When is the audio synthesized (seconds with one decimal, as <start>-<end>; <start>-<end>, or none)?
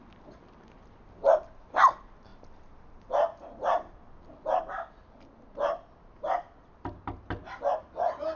none